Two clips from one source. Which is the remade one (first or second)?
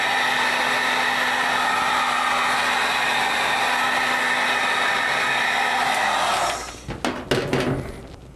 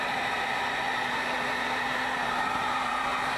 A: second